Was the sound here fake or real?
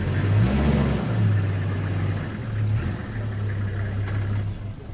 real